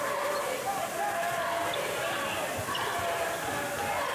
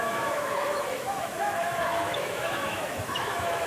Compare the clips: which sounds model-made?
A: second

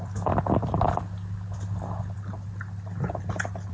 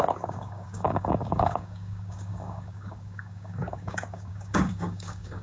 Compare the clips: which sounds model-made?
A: second